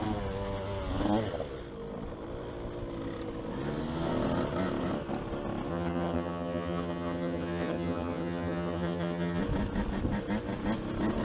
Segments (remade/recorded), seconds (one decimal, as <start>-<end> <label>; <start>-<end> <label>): 0.0-5.7 recorded; 5.7-9.4 remade; 9.4-11.2 recorded